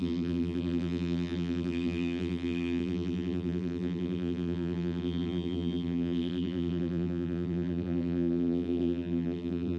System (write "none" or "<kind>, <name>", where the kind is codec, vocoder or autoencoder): vocoder, BigVGAN v2